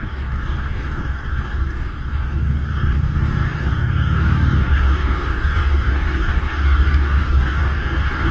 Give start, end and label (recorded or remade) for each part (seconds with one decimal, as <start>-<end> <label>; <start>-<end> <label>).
0.0-8.3 remade